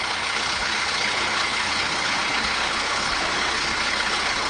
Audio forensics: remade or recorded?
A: remade